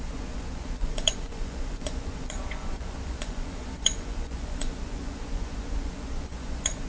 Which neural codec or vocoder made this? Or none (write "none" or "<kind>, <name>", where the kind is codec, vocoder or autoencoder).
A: vocoder, Vocos